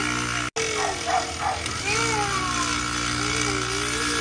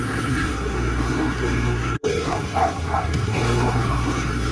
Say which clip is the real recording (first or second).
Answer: first